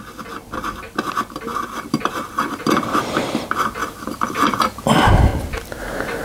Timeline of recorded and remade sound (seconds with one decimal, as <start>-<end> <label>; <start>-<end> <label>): 0.0-1.5 recorded; 1.5-3.4 remade; 3.4-3.8 recorded; 3.8-4.6 remade; 4.6-5.3 recorded; 5.3-5.8 remade; 5.8-6.2 recorded